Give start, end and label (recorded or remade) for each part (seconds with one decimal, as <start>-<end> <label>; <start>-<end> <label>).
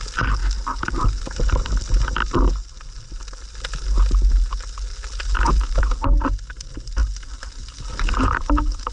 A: 0.0-8.9 recorded